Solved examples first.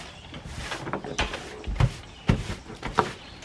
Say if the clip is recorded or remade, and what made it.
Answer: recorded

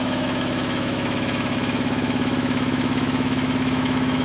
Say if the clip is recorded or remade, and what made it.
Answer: remade, autoencoder, DAC-VAE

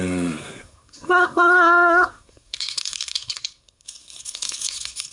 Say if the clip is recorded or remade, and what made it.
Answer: remade, codec, SNAC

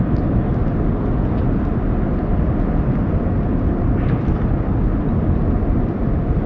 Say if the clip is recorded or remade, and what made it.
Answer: recorded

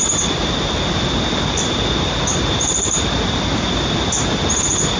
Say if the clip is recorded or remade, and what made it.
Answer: recorded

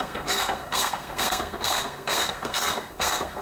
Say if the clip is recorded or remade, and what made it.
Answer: remade, codec, SNAC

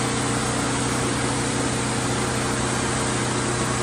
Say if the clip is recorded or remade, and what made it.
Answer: recorded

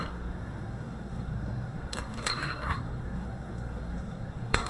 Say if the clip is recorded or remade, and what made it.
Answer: remade, codec, SNAC